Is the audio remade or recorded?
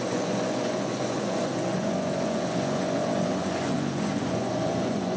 remade